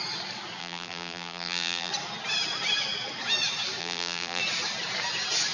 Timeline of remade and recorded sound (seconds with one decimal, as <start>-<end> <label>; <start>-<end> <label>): 0.0-0.6 recorded; 0.6-1.9 remade; 1.9-3.8 recorded; 3.8-4.4 remade; 4.4-5.5 recorded